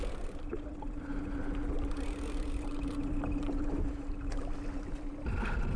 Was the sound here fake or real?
real